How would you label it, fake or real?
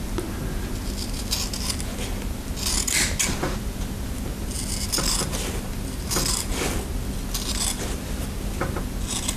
real